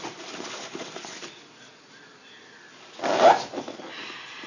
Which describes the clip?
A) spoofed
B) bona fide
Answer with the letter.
B